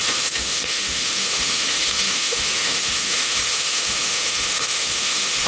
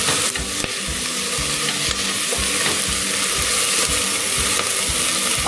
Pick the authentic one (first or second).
second